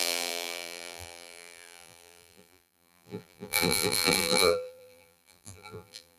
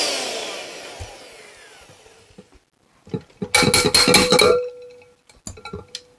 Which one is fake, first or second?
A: first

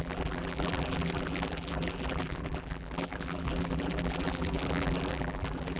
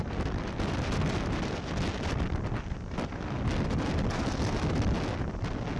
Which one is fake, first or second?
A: first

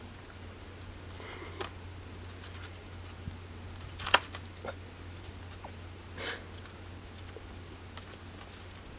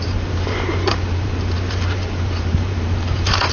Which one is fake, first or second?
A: second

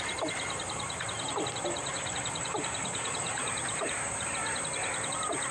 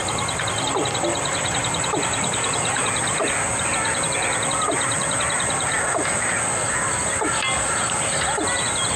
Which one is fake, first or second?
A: first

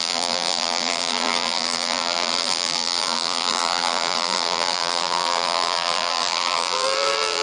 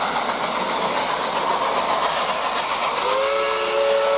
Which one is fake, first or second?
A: first